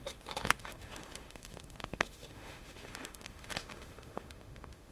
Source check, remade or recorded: remade